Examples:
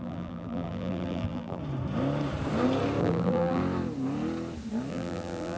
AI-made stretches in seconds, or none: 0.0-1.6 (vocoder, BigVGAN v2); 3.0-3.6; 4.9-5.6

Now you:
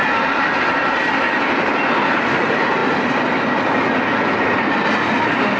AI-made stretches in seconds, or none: none